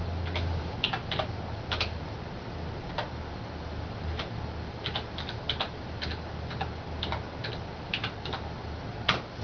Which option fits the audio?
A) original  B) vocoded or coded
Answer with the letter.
A